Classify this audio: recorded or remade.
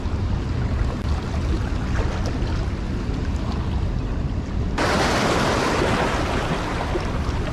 recorded